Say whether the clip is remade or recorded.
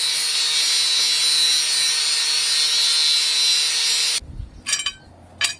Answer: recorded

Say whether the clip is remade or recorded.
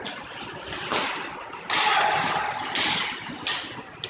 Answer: recorded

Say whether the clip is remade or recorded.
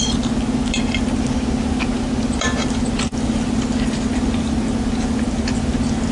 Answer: recorded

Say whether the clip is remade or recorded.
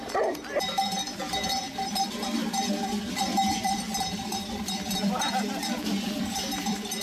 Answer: remade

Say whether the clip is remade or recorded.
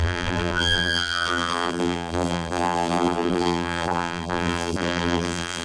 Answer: remade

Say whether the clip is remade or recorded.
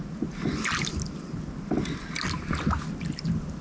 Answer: recorded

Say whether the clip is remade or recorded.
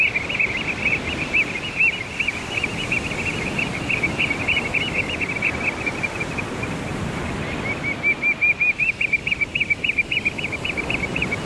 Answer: recorded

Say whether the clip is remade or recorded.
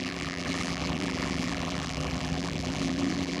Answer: remade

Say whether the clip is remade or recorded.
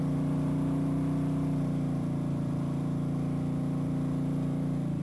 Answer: remade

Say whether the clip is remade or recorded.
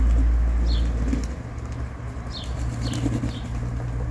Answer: recorded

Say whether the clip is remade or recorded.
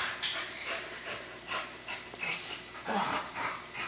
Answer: remade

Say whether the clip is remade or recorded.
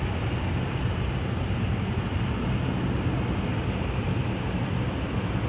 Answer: recorded